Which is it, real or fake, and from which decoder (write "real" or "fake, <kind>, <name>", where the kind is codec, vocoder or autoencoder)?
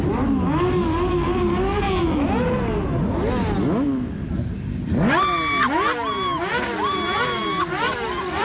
real